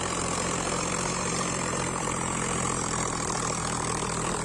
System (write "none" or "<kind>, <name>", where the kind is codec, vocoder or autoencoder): vocoder, BigVGAN v2